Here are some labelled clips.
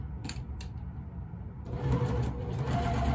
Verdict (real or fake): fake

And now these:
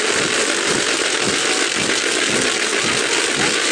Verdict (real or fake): real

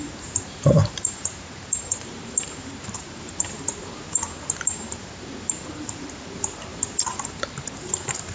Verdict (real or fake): fake